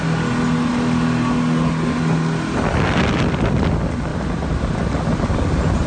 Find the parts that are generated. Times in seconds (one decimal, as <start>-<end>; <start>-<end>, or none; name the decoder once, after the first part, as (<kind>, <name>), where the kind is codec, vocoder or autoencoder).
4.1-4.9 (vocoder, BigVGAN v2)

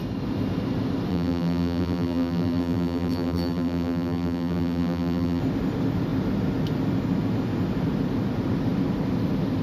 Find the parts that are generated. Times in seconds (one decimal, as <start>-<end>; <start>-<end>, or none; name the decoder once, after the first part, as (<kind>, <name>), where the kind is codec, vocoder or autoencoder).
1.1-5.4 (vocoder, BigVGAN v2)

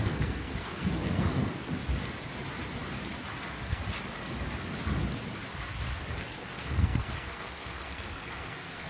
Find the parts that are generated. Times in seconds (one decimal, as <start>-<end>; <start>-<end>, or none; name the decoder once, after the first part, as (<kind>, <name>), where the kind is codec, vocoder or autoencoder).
0.0-1.8 (codec, SNAC); 3.4-3.8; 6.2-8.9

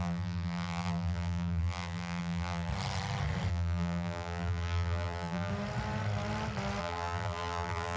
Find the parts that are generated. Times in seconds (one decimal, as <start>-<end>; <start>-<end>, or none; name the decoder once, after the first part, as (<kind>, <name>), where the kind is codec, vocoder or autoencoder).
0.0-2.7 (vocoder, BigVGAN v2); 3.5-5.5; 6.8-8.0

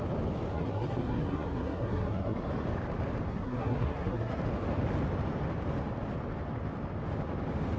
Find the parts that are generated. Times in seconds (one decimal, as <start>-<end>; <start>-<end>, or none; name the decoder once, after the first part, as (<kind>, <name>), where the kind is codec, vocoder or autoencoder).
0.5-2.5 (codec, SNAC); 3.3-4.4